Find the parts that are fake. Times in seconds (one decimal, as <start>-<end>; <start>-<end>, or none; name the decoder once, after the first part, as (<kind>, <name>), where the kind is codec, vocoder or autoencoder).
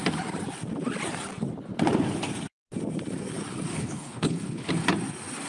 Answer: 3.7-4.7 (codec, HILCodec)